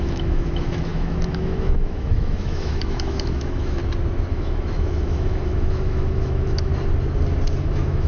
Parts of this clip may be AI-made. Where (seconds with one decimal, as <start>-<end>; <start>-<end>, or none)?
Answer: 0.0-3.8; 4.3-6.7; 7.6-8.1